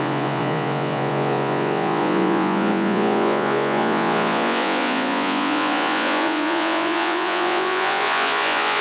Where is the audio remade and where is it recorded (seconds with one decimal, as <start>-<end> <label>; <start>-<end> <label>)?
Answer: 0.0-8.8 remade